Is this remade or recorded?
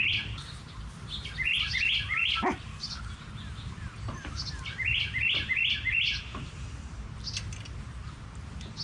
recorded